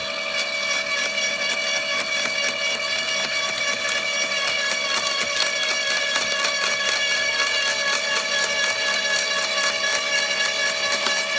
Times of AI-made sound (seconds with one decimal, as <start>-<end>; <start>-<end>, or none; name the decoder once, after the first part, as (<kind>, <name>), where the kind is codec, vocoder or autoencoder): none